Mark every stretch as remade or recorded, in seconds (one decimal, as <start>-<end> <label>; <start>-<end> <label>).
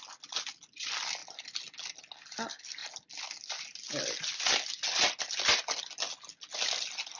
0.0-7.2 recorded